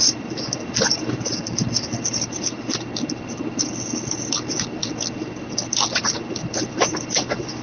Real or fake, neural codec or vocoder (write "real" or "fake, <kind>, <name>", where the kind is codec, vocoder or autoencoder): real